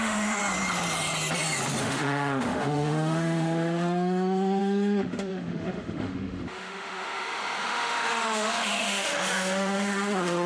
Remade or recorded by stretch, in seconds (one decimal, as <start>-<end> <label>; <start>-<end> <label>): 0.0-0.4 remade; 0.4-1.8 recorded; 1.8-10.5 remade